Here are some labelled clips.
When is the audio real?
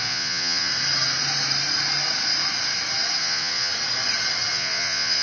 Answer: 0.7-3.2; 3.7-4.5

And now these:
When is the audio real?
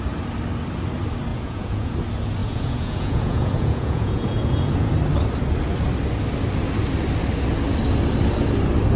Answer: 0.0-1.3; 1.9-2.4; 4.9-9.0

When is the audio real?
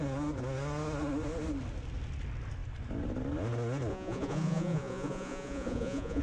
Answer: 0.0-3.9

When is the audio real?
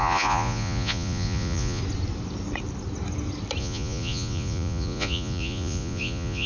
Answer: 1.8-3.6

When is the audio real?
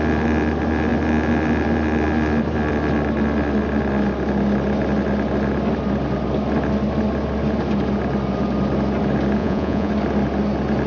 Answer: 0.0-9.4; 9.9-10.9